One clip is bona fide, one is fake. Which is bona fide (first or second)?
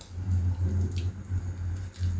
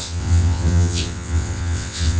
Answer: first